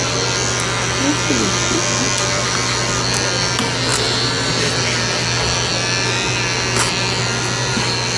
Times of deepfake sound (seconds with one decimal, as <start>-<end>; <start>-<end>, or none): 3.9-4.7